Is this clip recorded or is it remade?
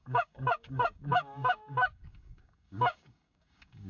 remade